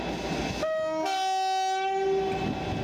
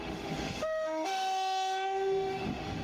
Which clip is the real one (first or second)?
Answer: first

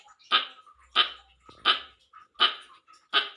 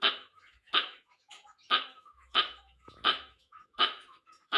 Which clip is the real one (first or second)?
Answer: first